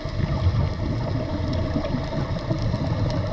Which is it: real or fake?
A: real